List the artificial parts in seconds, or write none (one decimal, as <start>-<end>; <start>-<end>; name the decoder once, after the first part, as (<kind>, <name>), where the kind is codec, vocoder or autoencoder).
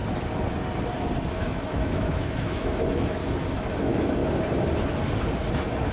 1.3-3.2 (autoencoder, DAC-VAE); 3.8-4.2; 5.5-5.9